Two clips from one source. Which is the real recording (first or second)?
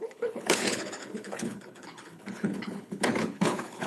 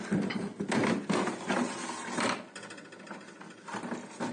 second